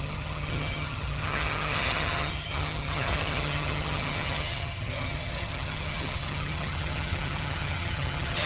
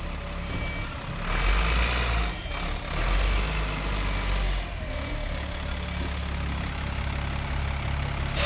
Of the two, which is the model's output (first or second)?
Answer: first